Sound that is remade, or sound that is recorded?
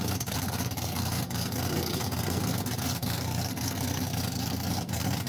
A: remade